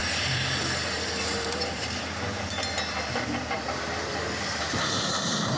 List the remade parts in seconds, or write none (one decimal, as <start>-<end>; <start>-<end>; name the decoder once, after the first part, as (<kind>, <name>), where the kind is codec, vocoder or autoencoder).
0.0-5.6 (vocoder, BigVGAN v2)